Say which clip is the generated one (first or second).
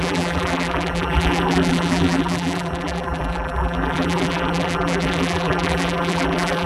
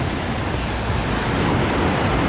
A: first